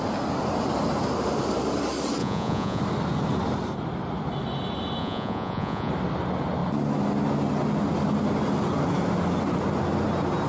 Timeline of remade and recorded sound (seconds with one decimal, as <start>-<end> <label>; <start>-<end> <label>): 0.0-2.2 recorded; 2.2-2.8 remade; 2.8-5.0 recorded; 5.0-5.9 remade; 5.9-10.5 recorded